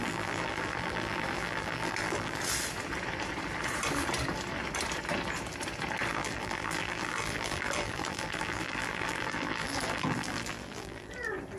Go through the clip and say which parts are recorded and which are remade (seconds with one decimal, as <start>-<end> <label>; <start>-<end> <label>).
0.0-2.4 remade; 2.4-6.1 recorded; 6.1-11.1 remade; 11.1-11.6 recorded